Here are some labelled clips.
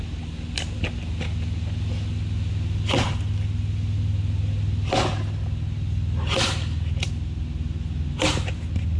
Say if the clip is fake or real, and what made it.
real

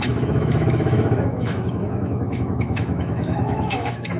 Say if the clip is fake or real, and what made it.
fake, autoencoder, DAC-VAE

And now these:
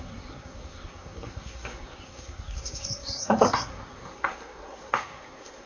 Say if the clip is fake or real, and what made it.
fake, codec, SNAC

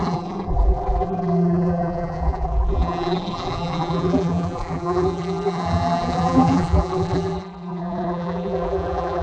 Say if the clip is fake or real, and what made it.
fake, vocoder, BigVGAN v2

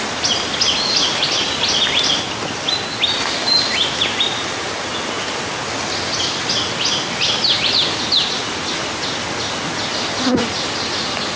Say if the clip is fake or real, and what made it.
real